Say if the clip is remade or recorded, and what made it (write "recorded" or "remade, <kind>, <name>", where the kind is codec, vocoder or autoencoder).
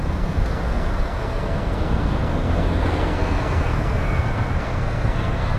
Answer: remade, codec, SNAC